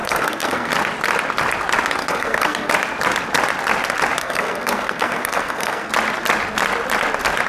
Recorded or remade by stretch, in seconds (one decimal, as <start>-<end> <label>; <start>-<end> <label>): 0.0-0.7 remade; 0.7-2.0 recorded; 2.0-2.7 remade; 2.7-4.2 recorded; 4.2-5.9 remade; 5.9-7.5 recorded